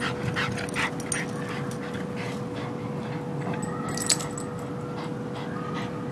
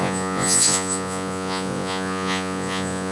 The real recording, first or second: first